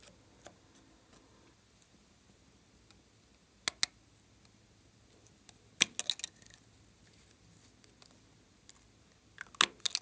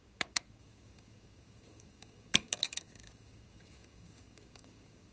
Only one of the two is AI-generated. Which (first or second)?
second